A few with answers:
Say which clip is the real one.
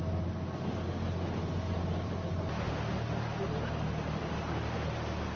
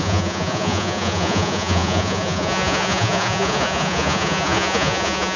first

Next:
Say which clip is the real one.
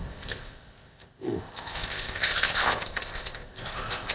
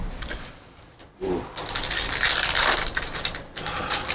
second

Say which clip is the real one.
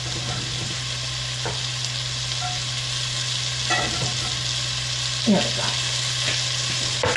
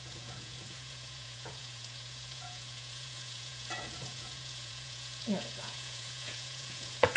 first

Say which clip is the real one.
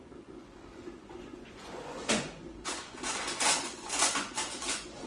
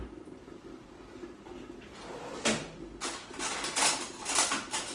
second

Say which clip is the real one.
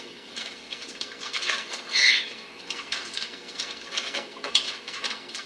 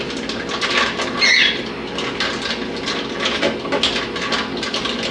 second